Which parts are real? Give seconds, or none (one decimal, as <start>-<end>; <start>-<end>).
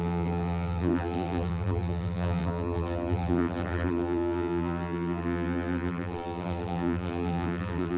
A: none